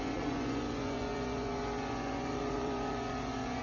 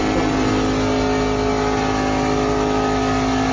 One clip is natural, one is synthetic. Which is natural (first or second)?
second